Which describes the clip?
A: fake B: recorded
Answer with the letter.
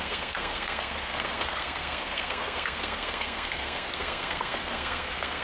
A